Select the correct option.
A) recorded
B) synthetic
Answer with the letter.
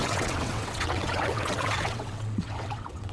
B